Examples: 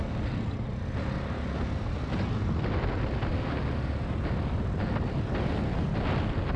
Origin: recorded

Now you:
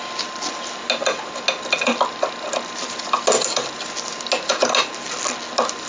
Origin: recorded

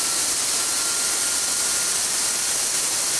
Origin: recorded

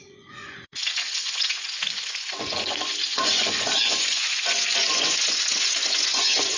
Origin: remade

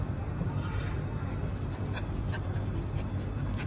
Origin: remade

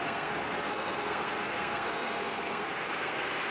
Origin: remade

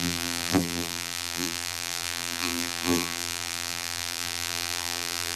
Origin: remade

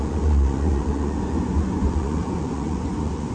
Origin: remade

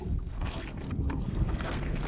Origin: remade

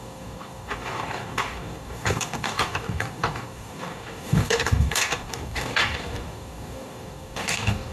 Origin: remade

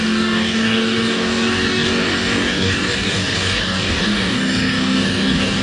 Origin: remade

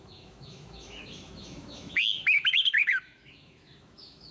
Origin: remade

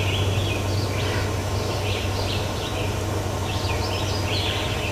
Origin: recorded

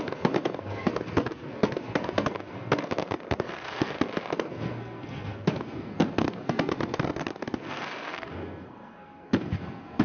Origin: remade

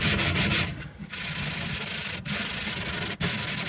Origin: recorded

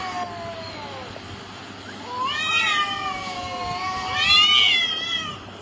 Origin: recorded